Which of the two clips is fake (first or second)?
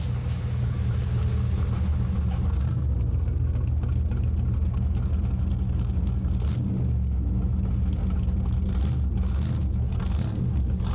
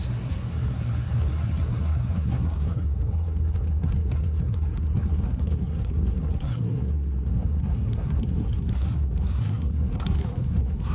second